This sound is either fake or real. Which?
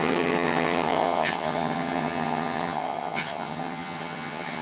fake